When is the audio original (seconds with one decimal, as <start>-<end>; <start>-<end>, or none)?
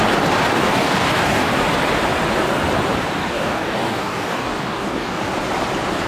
0.0-0.5; 1.5-3.2; 5.2-6.1